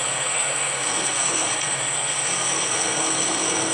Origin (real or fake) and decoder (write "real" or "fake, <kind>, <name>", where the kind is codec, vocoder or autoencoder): fake, codec, SNAC